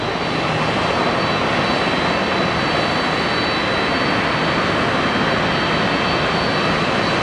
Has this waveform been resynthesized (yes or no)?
no